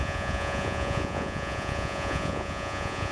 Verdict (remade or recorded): remade